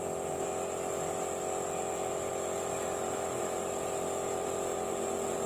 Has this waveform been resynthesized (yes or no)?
no